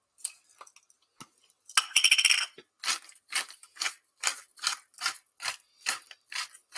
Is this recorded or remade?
recorded